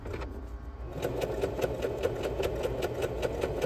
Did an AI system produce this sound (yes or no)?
no